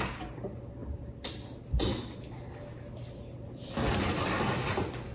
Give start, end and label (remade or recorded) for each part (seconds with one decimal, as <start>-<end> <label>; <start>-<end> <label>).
0.0-5.1 recorded